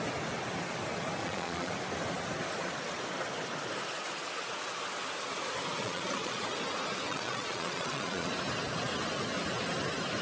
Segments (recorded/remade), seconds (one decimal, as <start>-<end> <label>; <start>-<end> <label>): 0.0-1.2 recorded; 1.2-1.7 remade; 1.7-5.8 recorded; 5.8-6.4 remade; 6.4-7.1 recorded; 7.1-8.3 remade; 8.3-10.2 recorded